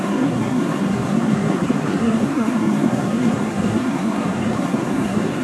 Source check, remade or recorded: remade